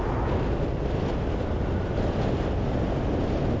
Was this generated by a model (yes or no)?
no